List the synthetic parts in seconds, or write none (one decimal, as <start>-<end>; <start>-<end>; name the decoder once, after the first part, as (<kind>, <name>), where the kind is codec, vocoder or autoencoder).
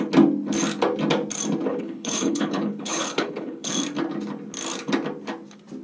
1.7-3.7 (codec, HILCodec)